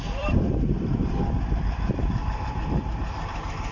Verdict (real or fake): fake